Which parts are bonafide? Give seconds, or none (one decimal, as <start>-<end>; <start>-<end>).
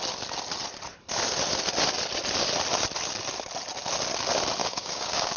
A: 0.0-4.6